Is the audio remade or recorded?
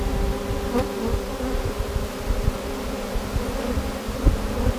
recorded